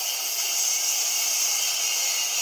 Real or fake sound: fake